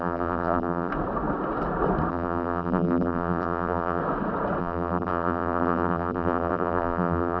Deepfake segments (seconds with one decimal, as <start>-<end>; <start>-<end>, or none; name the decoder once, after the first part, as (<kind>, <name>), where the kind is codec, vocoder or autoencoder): 0.0-0.9 (vocoder, BigVGAN v2); 2.1-4.0; 4.6-7.4